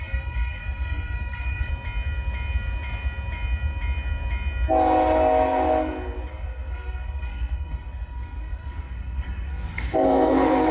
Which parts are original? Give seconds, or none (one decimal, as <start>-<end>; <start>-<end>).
1.7-6.3